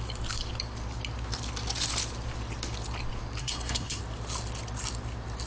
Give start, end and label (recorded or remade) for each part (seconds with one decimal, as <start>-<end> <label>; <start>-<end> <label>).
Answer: 0.0-3.4 recorded; 3.4-4.0 remade; 4.0-5.5 recorded